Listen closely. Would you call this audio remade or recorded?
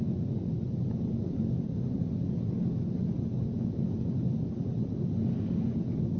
recorded